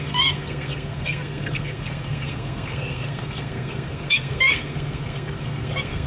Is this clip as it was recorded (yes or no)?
no